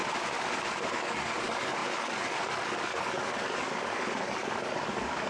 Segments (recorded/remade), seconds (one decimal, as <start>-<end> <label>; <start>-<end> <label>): 0.0-0.9 recorded; 0.9-5.3 remade